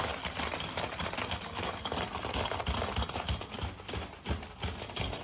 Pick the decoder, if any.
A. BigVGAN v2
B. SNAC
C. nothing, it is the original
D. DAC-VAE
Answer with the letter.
C